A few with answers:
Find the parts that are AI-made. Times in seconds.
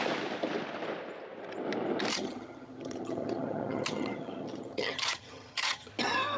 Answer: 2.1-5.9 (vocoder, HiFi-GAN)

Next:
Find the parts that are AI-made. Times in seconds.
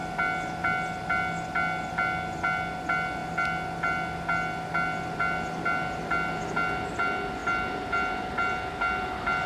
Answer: none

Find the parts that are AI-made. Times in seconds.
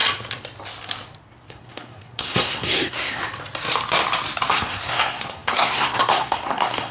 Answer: 1.5-3.2 (codec, SNAC); 4.5-6.9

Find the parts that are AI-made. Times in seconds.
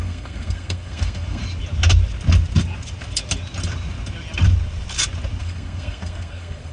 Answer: 0.0-1.4 (codec, SNAC); 5.4-6.7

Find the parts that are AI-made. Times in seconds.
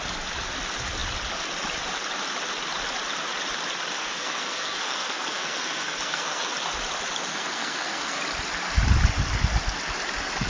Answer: 4.0-6.5 (codec, SNAC); 7.3-8.2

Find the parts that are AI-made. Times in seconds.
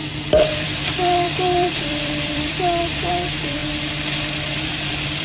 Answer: 0.0-3.6 (vocoder, BigVGAN v2); 4.6-5.2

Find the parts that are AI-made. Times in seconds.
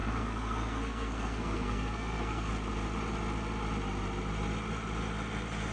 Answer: 0.0-2.5 (codec, SNAC)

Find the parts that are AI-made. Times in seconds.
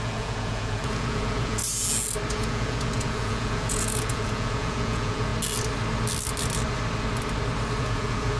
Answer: 0.0-1.6 (vocoder, Vocos); 2.3-5.3; 7.8-8.4